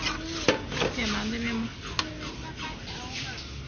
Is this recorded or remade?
recorded